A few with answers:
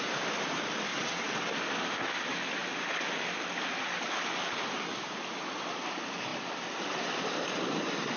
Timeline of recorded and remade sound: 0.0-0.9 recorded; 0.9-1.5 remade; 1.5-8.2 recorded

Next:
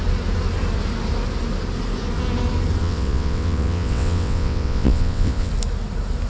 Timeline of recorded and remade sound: 0.0-2.8 recorded; 2.8-5.5 remade; 5.5-6.3 recorded

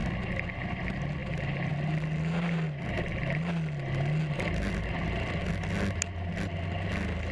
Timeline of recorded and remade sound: 0.0-7.3 recorded

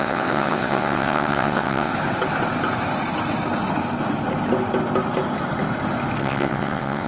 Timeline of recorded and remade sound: 0.0-1.9 remade; 1.9-6.2 recorded; 6.2-7.1 remade